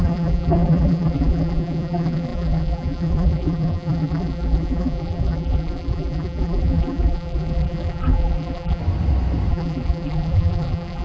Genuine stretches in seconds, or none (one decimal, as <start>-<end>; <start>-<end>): 8.8-9.5